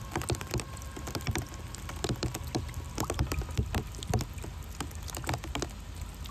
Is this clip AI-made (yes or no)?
no